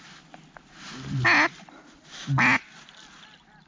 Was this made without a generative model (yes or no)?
yes